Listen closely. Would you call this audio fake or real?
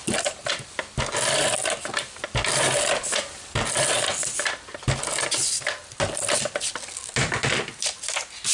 real